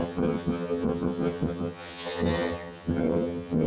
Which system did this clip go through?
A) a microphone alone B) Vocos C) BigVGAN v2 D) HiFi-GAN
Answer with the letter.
D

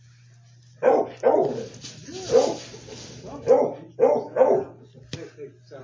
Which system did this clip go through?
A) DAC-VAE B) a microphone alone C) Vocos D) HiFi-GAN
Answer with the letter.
B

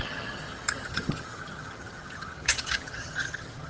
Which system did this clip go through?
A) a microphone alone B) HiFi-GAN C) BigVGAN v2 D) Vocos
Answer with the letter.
B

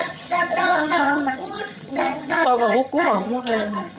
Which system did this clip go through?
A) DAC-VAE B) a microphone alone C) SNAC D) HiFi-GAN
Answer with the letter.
D